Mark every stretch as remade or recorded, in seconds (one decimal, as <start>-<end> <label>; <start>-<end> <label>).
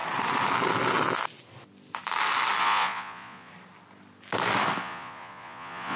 0.0-2.6 recorded; 2.6-3.5 remade; 3.5-4.8 recorded; 4.8-6.0 remade